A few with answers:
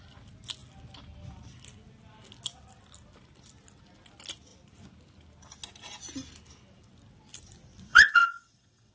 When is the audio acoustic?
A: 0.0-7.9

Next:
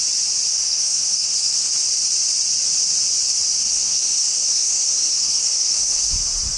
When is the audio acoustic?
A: 0.0-0.5; 1.7-3.6; 6.1-6.6

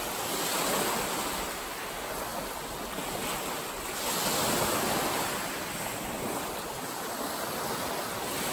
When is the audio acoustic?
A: 0.0-2.3; 3.0-8.5

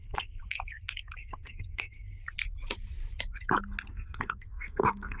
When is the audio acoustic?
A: 0.4-1.2; 2.2-3.9

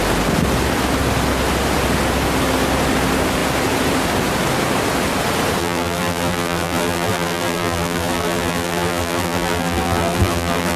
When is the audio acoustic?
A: 0.0-5.6

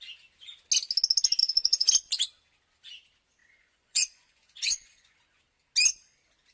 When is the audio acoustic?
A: 0.0-1.4; 1.9-3.4; 5.4-6.5

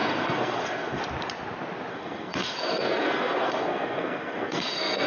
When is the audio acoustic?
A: 1.0-1.9

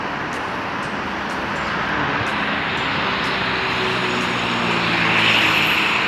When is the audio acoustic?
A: 0.0-6.1